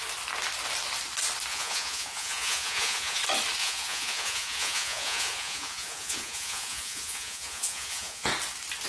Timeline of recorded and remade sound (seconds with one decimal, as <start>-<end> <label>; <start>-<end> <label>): 0.0-1.5 recorded; 1.5-3.2 remade; 3.2-3.6 recorded; 3.6-8.3 remade; 8.3-8.9 recorded